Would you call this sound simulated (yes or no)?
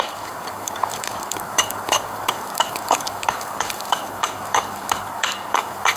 yes